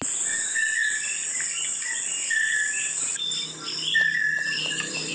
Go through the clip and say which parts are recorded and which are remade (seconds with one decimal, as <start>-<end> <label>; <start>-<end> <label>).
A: 0.0-4.2 recorded; 4.2-5.1 remade